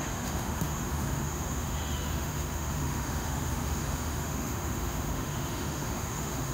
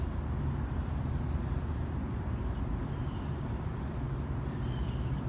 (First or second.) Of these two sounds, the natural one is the second